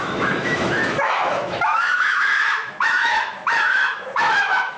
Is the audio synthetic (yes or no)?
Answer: yes